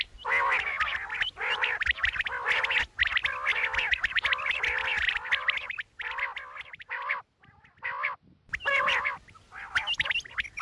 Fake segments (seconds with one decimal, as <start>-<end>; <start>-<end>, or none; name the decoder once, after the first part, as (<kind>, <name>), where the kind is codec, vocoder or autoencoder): none